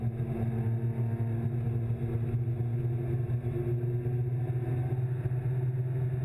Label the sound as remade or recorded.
recorded